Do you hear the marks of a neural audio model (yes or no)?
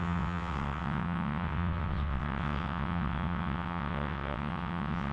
yes